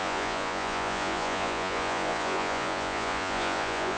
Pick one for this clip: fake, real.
fake